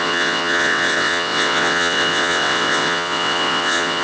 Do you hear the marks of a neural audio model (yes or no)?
yes